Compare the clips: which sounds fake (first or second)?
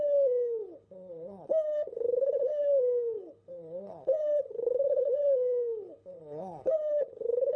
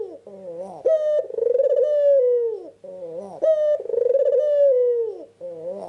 first